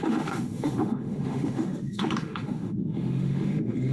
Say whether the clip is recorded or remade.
remade